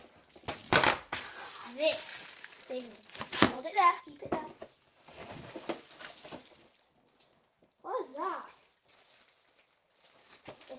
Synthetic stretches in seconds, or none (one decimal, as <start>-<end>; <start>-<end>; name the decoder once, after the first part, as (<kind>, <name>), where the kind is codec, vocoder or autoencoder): 2.1-4.0 (vocoder, Vocos); 5.2-5.7